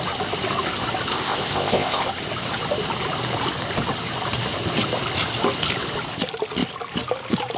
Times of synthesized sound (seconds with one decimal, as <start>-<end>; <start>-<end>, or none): 1.1-2.1